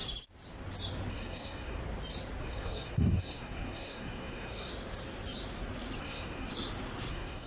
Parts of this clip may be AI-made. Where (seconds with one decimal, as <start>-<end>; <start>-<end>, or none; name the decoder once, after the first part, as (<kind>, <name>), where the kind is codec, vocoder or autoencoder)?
1.1-1.8 (codec, SNAC); 2.4-4.7; 6.0-6.5; 7.1-7.5